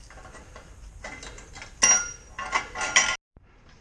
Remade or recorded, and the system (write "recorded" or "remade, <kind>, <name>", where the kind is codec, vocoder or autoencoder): recorded